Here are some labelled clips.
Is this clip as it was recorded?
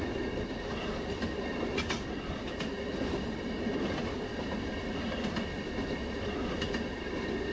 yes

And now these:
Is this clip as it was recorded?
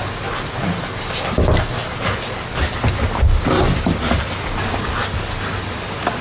yes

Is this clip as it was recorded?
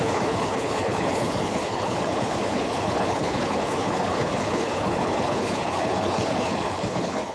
no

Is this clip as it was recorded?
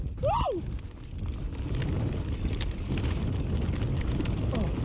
yes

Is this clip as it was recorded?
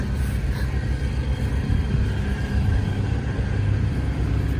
yes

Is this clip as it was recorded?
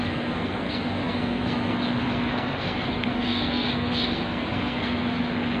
no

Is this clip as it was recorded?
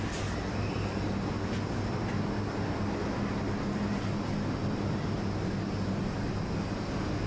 yes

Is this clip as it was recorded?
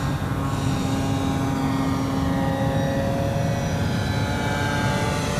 yes